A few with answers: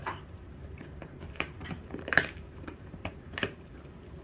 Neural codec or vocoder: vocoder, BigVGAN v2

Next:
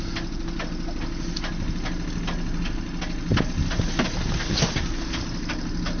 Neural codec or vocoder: none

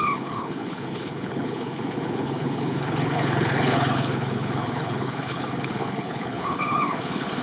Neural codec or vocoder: codec, HILCodec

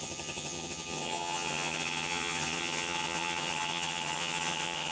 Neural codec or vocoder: vocoder, HiFi-GAN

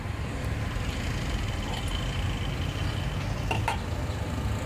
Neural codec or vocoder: none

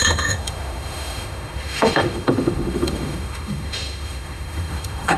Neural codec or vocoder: autoencoder, DAC-VAE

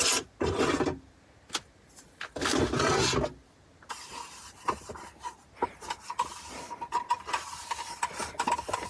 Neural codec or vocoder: none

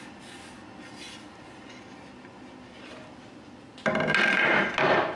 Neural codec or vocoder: none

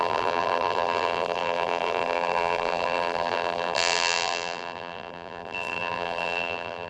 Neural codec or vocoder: vocoder, BigVGAN v2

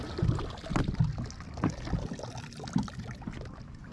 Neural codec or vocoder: none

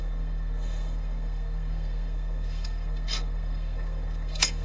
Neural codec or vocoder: codec, SNAC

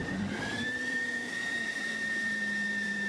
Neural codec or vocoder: vocoder, BigVGAN v2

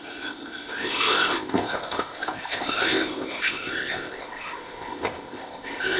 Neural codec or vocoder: codec, ZipCodec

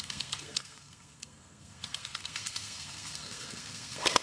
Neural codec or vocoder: codec, SNAC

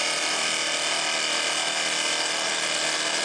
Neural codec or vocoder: none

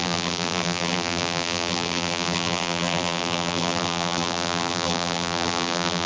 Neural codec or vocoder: vocoder, BigVGAN v2